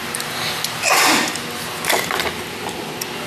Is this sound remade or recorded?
recorded